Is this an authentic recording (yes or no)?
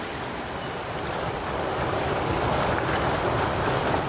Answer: yes